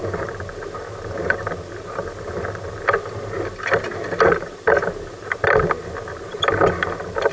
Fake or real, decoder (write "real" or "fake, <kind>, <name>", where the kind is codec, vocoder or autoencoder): real